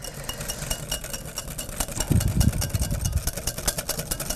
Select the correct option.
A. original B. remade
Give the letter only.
A